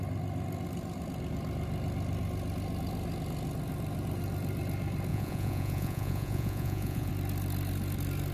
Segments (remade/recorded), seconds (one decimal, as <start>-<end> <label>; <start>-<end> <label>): 0.0-5.1 recorded; 5.1-7.1 remade; 7.1-8.3 recorded